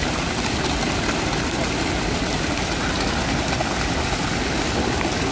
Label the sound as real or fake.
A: real